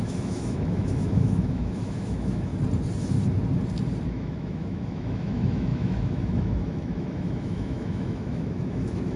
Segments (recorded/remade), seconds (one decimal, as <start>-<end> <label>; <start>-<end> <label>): 0.0-2.5 remade; 2.5-4.1 recorded; 4.1-9.2 remade